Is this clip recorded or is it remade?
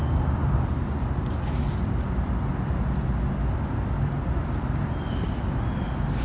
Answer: recorded